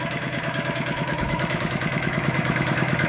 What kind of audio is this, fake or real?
fake